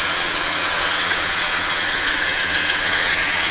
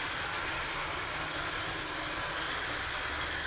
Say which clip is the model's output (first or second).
first